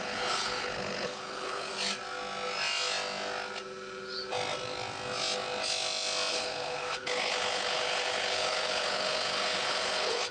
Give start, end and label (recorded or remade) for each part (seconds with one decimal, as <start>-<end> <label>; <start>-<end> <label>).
0.0-1.7 remade; 1.7-6.3 recorded; 6.3-10.3 remade